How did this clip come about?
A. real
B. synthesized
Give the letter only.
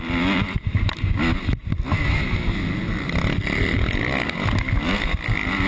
A